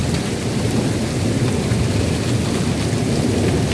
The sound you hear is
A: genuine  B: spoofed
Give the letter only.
A